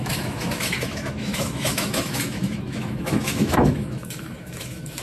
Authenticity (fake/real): fake